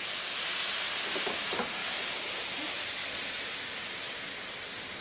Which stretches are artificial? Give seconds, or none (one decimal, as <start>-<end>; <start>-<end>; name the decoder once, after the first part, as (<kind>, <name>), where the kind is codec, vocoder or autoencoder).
1.8-2.6 (vocoder, BigVGAN v2)